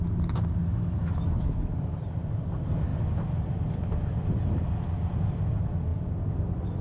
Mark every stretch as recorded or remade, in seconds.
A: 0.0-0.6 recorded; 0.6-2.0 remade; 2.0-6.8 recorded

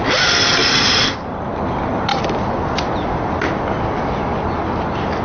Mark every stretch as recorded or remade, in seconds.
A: 0.0-0.6 recorded; 0.6-1.6 remade; 1.6-5.2 recorded

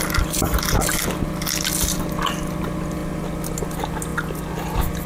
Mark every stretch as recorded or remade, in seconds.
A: 0.0-5.1 recorded

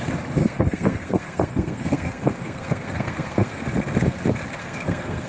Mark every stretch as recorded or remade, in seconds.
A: 0.0-0.4 recorded; 0.4-3.6 remade; 3.6-4.6 recorded; 4.6-5.3 remade

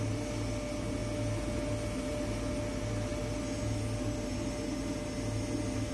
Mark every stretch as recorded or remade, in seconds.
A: 0.0-5.9 recorded